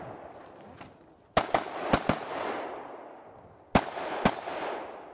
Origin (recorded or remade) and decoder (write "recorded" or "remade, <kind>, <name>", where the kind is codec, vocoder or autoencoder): recorded